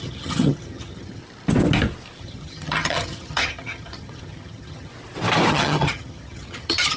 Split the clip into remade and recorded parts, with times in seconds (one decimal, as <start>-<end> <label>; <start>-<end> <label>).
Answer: 0.0-1.2 remade; 1.2-2.2 recorded; 2.2-4.9 remade; 4.9-5.5 recorded; 5.5-7.0 remade